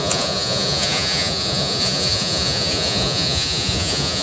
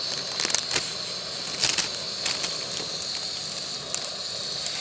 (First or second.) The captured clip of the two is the second